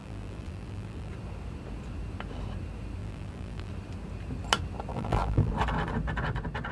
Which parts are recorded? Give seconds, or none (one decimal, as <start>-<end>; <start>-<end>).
1.1-3.0; 3.7-4.9; 5.5-6.7